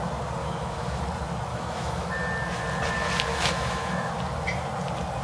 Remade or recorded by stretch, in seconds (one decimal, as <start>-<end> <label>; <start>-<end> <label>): 0.0-0.4 recorded; 0.4-1.0 remade; 1.0-1.5 recorded; 1.5-2.1 remade; 2.1-3.3 recorded; 3.3-4.1 remade; 4.1-5.2 recorded